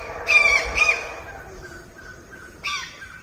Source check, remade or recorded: recorded